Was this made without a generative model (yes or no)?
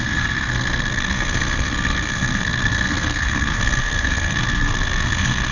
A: no